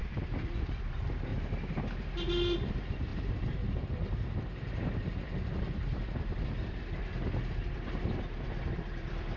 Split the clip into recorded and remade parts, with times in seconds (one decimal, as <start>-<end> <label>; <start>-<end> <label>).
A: 0.0-1.3 remade; 1.3-2.7 recorded; 2.7-9.4 remade